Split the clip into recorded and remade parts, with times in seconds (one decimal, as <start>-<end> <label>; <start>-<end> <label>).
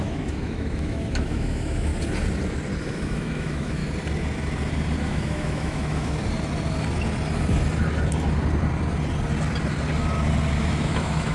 0.0-1.9 remade; 1.9-2.8 recorded; 2.8-3.8 remade; 3.8-5.0 recorded; 5.0-6.2 remade; 6.2-10.6 recorded; 10.6-11.3 remade